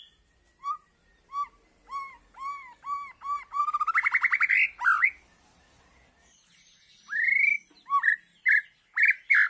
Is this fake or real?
real